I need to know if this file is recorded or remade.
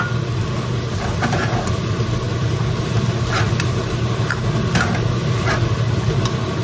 remade